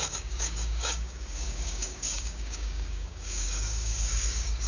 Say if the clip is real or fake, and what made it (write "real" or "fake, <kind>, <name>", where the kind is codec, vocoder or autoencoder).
fake, codec, DAC